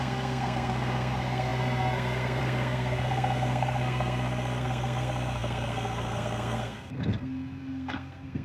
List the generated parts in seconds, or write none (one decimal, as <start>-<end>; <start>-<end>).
0.0-8.4